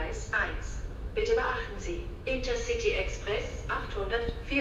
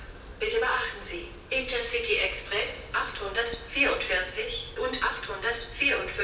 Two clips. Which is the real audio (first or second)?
second